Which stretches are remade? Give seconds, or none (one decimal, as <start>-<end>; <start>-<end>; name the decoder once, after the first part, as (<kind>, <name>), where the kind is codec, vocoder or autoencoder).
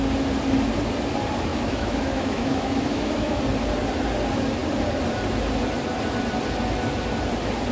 1.5-3.4 (autoencoder, DAC-VAE)